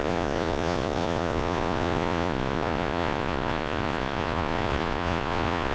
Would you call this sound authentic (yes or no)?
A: no